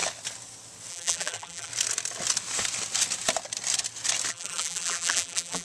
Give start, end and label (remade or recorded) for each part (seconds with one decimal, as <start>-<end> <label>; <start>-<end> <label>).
0.0-0.9 recorded; 0.9-1.7 remade; 1.7-4.3 recorded; 4.3-5.6 remade